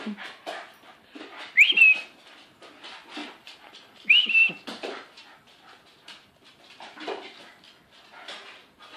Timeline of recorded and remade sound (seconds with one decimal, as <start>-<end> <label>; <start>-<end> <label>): 0.0-3.2 recorded; 3.2-4.5 remade; 4.5-9.0 recorded

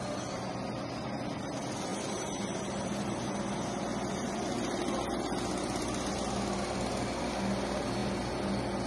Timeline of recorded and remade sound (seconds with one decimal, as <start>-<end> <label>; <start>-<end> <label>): 0.0-1.9 recorded; 1.9-3.4 remade; 3.4-8.9 recorded